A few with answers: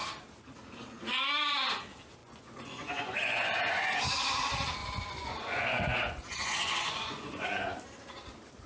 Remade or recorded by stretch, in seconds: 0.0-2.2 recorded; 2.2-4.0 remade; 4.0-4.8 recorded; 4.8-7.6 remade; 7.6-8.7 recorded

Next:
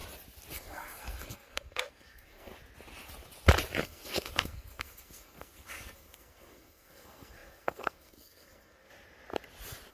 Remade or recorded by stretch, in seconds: 0.0-0.5 recorded; 0.5-2.5 remade; 2.5-3.8 recorded; 3.8-8.9 remade; 8.9-9.9 recorded

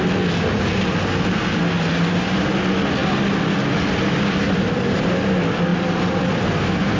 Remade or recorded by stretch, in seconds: 0.0-7.0 recorded

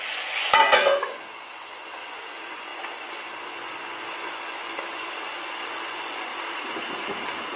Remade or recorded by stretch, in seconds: 0.0-6.3 remade; 6.3-7.6 recorded

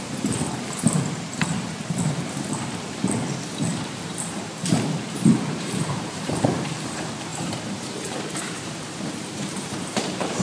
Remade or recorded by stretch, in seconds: 0.0-3.7 recorded; 3.7-6.7 remade; 6.7-7.3 recorded; 7.3-10.0 remade; 10.0-10.4 recorded

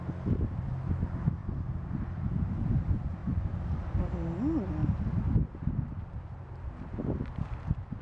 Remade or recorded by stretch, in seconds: 0.0-1.4 recorded; 1.4-2.0 remade; 2.0-3.2 recorded; 3.2-4.1 remade; 4.1-8.0 recorded